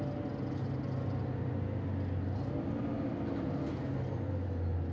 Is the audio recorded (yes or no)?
yes